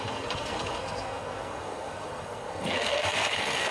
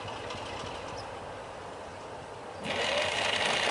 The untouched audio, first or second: second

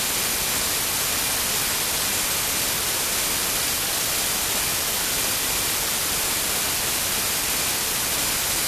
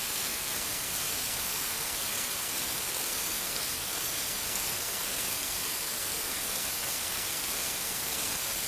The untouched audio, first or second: first